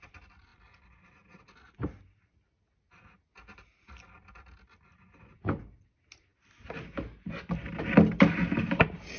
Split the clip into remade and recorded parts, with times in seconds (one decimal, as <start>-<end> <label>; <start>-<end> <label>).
0.0-9.2 recorded